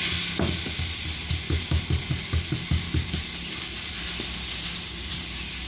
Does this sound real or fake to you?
real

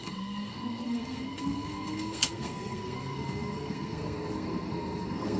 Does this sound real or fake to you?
fake